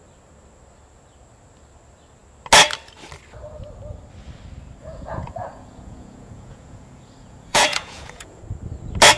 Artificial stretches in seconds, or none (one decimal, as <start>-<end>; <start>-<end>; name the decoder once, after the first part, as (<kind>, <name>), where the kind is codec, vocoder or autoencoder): 4.8-8.4 (vocoder, Vocos)